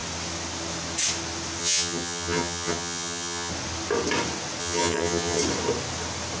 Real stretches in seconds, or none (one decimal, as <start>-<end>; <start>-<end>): 0.0-1.6; 3.5-4.6; 5.4-6.4